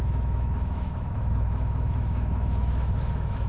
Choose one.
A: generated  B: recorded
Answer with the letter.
A